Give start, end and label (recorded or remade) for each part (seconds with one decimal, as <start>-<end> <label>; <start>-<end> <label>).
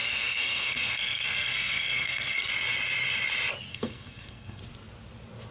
0.0-2.5 remade; 2.5-3.7 recorded; 3.7-4.6 remade; 4.6-5.5 recorded